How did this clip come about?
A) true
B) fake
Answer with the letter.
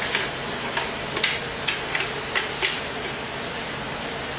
A